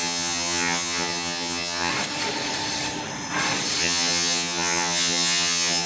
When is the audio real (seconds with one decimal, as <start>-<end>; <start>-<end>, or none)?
1.9-3.8

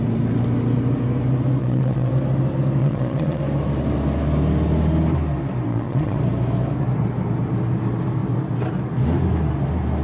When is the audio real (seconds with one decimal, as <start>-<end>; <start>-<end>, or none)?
0.0-1.6; 2.1-2.8; 3.4-5.7; 6.2-10.0

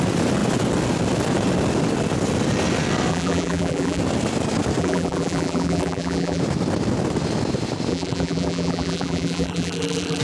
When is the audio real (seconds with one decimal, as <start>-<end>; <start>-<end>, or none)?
0.0-3.1; 4.0-4.8; 6.4-7.9